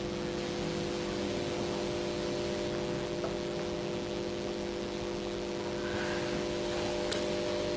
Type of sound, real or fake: real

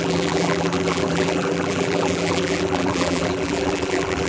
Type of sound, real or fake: fake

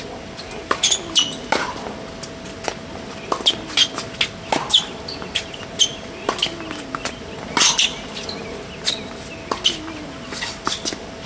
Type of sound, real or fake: real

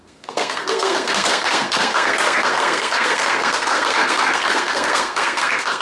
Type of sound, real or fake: fake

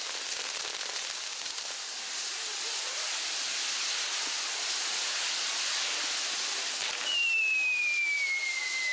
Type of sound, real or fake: real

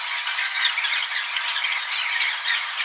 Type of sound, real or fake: real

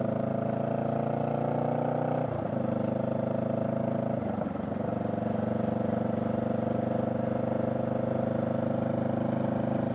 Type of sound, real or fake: real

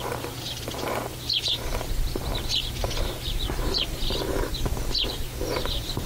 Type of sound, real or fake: fake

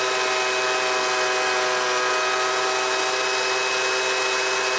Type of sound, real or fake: real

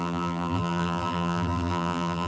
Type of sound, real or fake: fake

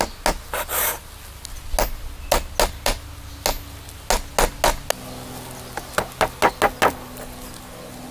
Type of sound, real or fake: real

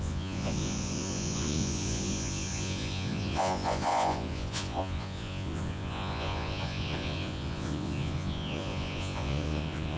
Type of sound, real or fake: fake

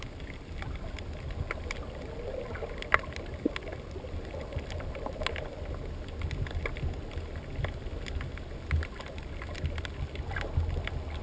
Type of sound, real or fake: real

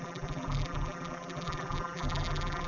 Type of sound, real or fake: fake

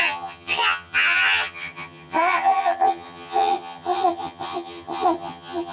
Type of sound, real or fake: fake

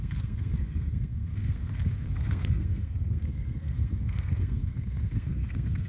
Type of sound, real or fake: fake